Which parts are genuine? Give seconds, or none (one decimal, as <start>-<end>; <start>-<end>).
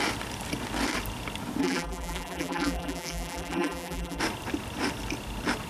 0.0-1.6; 4.2-5.7